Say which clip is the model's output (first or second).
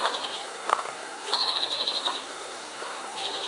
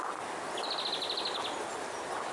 first